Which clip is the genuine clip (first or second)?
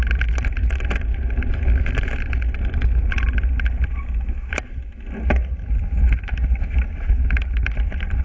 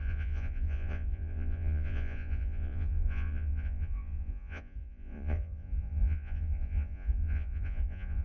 first